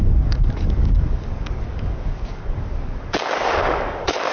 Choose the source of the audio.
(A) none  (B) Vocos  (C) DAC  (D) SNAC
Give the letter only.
C